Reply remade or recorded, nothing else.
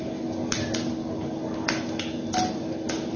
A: recorded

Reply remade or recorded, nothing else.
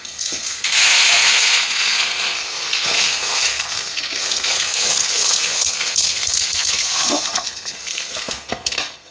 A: remade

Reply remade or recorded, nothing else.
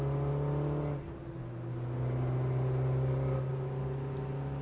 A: recorded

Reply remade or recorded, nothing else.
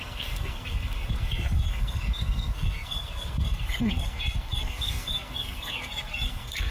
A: remade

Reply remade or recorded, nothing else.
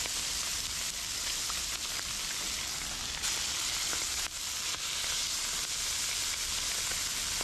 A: recorded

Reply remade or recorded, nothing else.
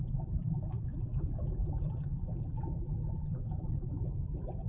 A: remade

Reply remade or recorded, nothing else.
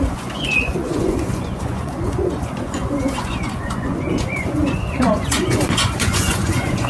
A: remade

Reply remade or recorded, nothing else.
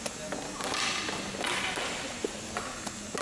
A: recorded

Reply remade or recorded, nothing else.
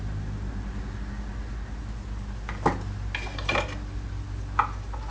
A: recorded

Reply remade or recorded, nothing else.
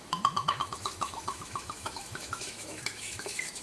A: remade